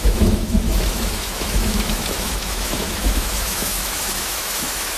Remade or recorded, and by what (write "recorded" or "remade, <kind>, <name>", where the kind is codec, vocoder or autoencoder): remade, autoencoder, DAC-VAE